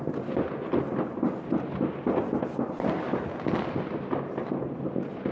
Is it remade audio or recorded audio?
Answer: recorded